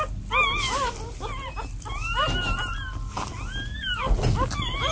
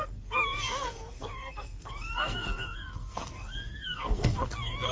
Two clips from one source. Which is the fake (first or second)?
second